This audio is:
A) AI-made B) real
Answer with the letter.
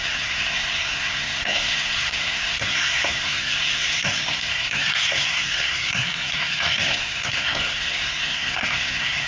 A